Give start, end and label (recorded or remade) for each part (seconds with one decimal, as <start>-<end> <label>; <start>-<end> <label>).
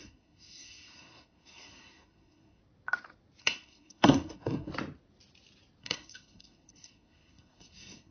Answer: 0.0-2.6 remade; 2.6-3.4 recorded; 3.4-4.7 remade; 4.7-5.8 recorded; 5.8-8.1 remade